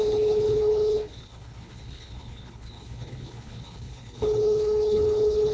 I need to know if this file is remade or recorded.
remade